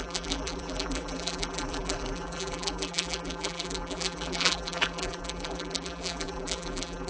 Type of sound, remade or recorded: remade